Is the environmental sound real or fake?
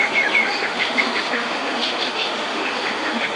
fake